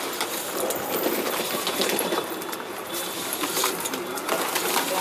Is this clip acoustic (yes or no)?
no